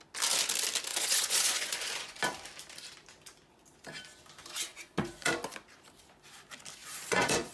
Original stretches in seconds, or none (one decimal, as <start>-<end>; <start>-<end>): 0.0-0.9; 2.2-4.7; 5.3-6.8